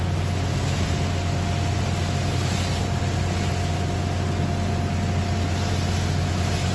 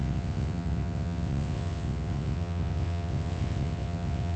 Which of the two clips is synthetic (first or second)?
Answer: second